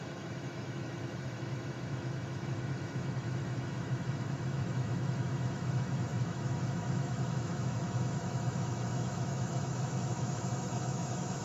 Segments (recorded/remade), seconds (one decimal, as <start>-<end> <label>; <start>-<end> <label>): 0.0-11.4 remade